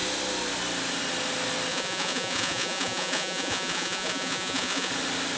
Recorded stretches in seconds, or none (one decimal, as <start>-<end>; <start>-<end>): 0.0-1.7; 4.9-5.4